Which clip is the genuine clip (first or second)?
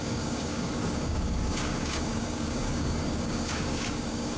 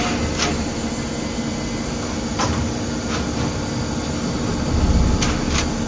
second